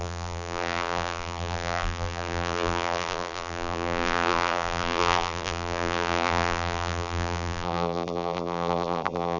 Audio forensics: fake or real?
fake